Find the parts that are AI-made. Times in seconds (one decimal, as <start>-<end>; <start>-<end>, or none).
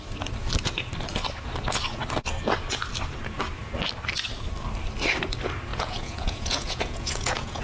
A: 5.7-7.6